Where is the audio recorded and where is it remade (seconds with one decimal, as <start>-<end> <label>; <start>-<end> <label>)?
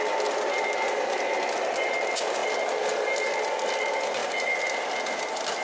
0.0-5.6 recorded